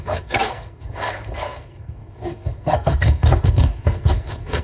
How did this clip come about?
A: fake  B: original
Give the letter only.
A